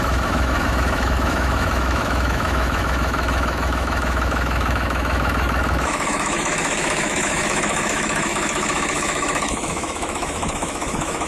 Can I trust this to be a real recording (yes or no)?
no